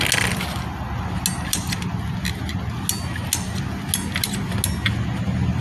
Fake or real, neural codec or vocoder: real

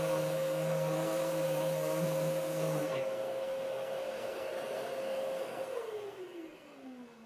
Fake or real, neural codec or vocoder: fake, codec, SNAC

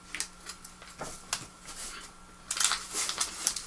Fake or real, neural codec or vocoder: real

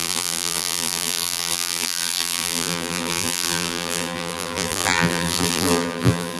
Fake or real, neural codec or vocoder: fake, vocoder, BigVGAN v2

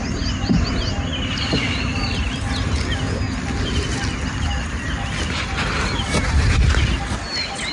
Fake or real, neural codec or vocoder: real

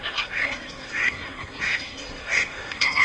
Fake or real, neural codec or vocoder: fake, codec, SNAC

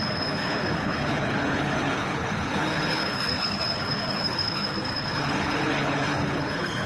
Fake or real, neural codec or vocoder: fake, codec, HILCodec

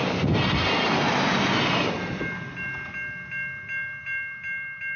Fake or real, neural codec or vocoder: real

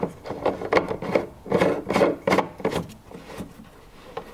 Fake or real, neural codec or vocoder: real